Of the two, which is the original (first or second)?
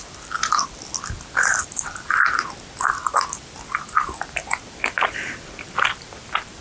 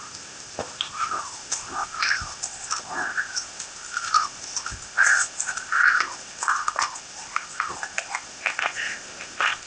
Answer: first